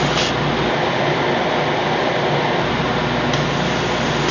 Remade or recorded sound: recorded